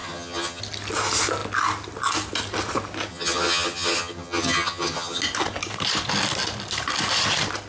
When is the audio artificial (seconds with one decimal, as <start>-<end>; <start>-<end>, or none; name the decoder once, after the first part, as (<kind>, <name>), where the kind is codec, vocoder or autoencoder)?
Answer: 0.0-0.6 (vocoder, HiFi-GAN); 3.1-5.2